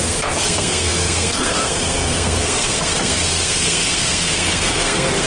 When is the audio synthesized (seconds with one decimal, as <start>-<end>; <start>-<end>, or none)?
0.0-5.3